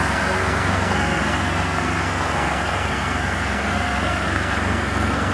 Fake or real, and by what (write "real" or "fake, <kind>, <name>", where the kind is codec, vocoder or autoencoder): fake, codec, SNAC